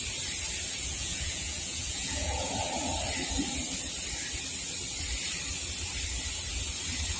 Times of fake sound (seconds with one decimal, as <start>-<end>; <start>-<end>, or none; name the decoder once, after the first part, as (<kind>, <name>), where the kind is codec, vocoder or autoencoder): 0.9-2.5 (vocoder, Vocos)

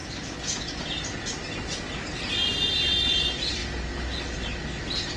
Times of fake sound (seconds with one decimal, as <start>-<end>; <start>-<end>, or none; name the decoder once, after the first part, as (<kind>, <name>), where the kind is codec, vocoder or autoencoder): 3.1-3.6 (vocoder, BigVGAN v2)

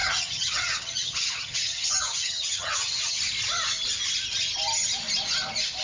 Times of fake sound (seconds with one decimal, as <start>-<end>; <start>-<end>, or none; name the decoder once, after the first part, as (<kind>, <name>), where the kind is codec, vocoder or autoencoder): 0.0-3.2 (vocoder, HiFi-GAN)

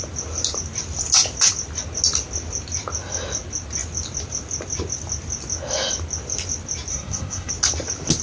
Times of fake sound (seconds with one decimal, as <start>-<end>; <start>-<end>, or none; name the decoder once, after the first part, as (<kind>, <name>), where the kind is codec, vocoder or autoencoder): 6.9-7.5 (codec, SNAC)